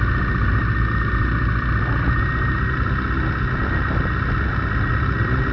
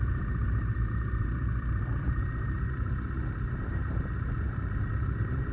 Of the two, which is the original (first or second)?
first